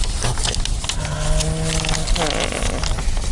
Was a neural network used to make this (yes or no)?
no